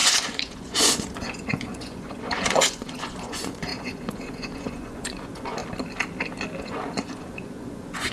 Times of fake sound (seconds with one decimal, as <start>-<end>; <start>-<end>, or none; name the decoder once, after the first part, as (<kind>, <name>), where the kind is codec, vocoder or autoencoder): 0.0-5.6 (vocoder, Vocos); 6.6-8.1